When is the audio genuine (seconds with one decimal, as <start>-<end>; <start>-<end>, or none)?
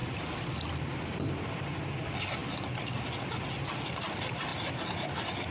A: 0.0-5.5